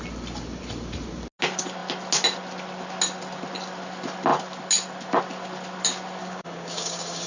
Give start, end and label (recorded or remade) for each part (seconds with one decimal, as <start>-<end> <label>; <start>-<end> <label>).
0.0-6.2 recorded; 6.2-7.3 remade

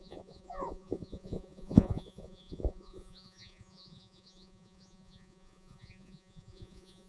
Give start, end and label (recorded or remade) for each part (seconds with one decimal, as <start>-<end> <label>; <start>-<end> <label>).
0.0-7.1 remade

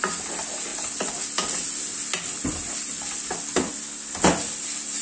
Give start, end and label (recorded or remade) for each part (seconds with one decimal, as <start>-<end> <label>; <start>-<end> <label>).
0.0-5.0 recorded

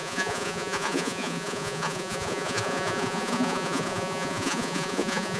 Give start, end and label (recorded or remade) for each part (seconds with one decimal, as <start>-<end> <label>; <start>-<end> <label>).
0.0-5.4 remade

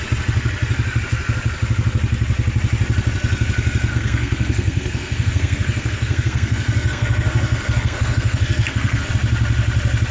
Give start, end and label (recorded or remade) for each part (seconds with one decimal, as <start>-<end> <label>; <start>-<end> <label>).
0.0-3.9 recorded; 3.9-9.1 remade; 9.1-10.1 recorded

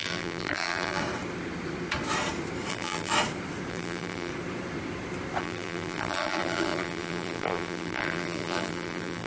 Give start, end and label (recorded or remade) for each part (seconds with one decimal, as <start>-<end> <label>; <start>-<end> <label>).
0.0-1.0 remade; 1.0-2.7 recorded; 2.7-3.1 remade; 3.1-3.7 recorded; 3.7-4.3 remade; 4.3-5.4 recorded; 5.4-9.3 remade

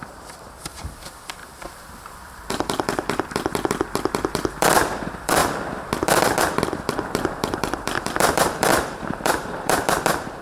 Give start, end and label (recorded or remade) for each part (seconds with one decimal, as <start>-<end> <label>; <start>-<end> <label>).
0.0-5.4 remade; 5.4-6.4 recorded; 6.4-10.4 remade

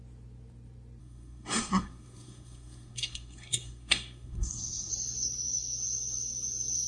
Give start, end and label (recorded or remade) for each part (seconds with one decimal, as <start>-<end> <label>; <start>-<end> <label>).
0.0-1.0 recorded; 1.0-4.9 remade; 4.9-6.9 recorded